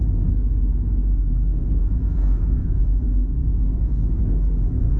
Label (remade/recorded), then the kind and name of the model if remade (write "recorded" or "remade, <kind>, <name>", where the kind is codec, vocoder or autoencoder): remade, codec, SNAC